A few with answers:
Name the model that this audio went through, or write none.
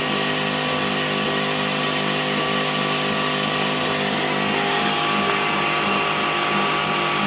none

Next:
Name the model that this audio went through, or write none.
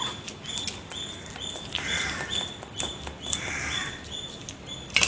none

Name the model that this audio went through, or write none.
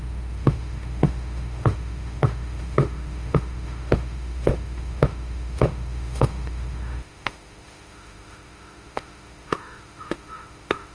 autoencoder, DAC-VAE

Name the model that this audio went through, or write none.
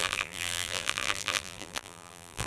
vocoder, BigVGAN v2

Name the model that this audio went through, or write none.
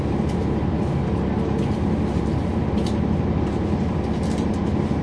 none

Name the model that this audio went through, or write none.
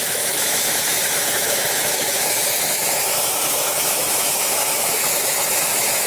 autoencoder, DAC-VAE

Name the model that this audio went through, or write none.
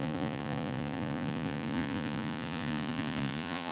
vocoder, Vocos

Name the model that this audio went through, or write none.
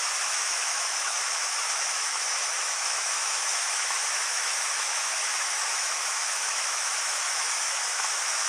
autoencoder, DAC-VAE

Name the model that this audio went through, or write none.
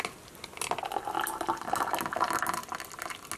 none